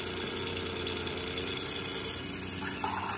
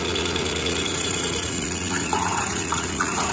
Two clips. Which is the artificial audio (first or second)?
second